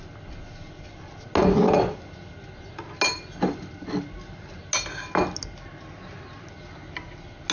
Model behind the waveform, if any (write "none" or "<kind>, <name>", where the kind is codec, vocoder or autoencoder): none